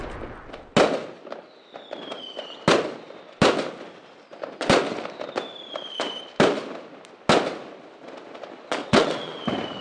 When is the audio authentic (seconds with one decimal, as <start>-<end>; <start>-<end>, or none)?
0.0-8.8; 9.4-9.8